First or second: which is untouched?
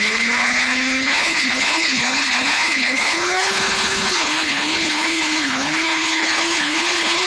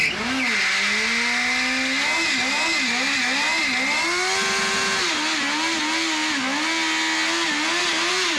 second